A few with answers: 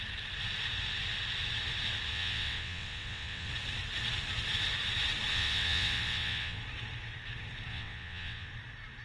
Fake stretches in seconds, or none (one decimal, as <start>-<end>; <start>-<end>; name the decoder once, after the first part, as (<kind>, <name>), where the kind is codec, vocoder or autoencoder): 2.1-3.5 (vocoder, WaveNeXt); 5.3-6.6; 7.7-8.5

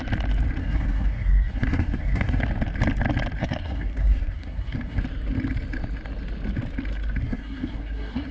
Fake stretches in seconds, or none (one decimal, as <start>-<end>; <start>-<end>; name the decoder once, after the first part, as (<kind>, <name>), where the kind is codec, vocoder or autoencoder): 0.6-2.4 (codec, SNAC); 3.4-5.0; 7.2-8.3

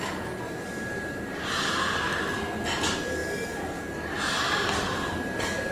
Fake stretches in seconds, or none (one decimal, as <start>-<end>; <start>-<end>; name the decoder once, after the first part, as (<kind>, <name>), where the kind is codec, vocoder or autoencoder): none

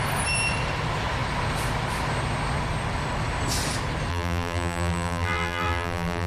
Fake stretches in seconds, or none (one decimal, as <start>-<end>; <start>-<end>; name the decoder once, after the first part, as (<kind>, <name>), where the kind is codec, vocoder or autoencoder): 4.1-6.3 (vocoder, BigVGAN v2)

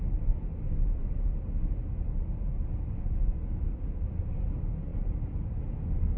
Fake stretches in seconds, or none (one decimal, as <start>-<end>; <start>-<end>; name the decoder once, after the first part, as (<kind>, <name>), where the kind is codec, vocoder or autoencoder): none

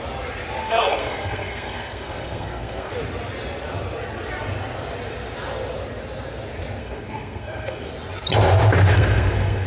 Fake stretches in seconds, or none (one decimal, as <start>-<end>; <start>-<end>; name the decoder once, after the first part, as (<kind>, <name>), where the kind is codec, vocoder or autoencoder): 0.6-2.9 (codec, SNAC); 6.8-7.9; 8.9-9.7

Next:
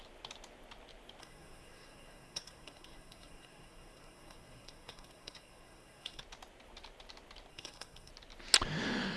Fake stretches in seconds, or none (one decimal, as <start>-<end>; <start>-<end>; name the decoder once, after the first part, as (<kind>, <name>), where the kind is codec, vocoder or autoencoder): 1.2-6.2 (codec, SNAC); 7.5-8.1